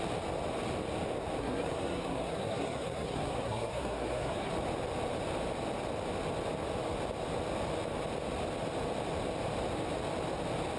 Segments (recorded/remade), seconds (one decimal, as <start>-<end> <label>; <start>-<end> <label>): 0.0-1.4 recorded; 1.4-4.5 remade; 4.5-10.8 recorded